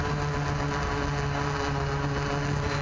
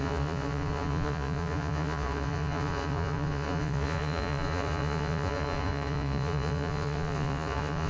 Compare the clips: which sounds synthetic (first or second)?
second